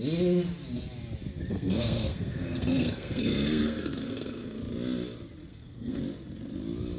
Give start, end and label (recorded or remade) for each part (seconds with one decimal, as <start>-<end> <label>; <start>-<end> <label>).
0.0-1.5 recorded; 1.5-4.6 remade; 4.6-5.5 recorded; 5.5-6.0 remade; 6.0-7.0 recorded